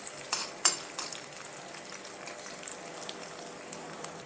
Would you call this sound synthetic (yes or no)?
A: yes